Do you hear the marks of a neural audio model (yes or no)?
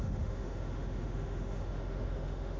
yes